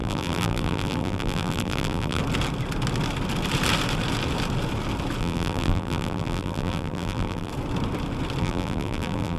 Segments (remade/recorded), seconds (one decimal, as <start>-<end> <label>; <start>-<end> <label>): 0.0-2.2 remade; 2.2-5.2 recorded; 5.2-7.5 remade; 7.5-8.4 recorded; 8.4-9.4 remade